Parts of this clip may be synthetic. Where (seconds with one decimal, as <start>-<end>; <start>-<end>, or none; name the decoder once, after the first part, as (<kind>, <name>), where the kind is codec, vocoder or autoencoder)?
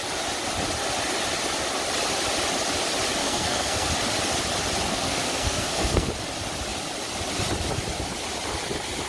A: 3.2-3.9 (codec, SNAC); 4.9-6.1